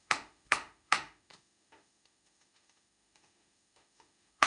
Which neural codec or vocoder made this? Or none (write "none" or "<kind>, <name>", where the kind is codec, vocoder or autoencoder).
autoencoder, DAC-VAE